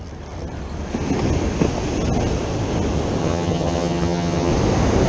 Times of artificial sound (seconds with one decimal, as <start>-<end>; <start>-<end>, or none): 3.2-4.5